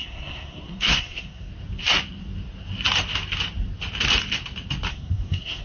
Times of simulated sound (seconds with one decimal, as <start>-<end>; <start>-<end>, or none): 0.0-1.5; 4.9-5.6